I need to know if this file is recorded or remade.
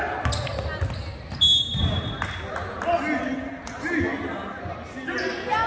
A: recorded